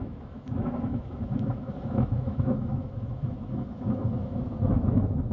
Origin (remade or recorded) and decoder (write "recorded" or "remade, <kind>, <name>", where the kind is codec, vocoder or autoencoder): remade, autoencoder, DAC-VAE